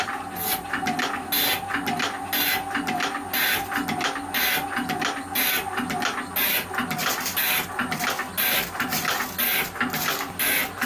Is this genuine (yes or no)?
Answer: yes